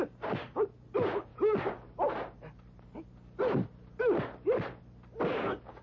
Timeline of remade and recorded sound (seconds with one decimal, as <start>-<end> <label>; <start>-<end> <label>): 0.0-5.8 recorded